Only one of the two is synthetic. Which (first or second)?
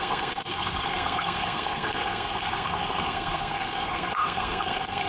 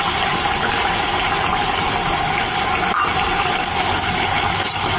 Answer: first